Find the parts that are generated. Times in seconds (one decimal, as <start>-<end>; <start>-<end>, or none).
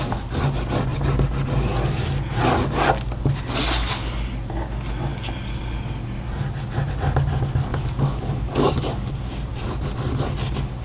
7.7-9.1